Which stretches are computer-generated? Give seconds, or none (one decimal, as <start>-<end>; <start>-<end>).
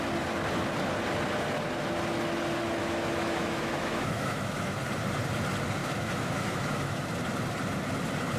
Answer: 2.8-4.8; 5.8-7.0